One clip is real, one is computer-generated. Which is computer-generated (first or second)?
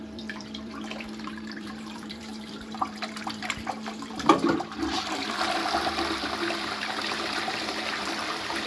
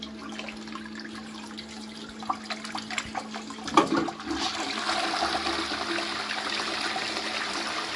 first